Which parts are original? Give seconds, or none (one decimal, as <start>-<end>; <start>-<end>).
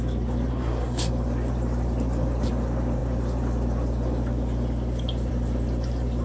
0.0-0.5; 1.1-6.2